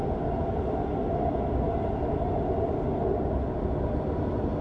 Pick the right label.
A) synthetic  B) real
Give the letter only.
B